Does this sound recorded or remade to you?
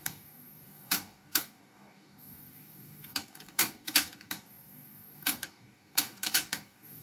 remade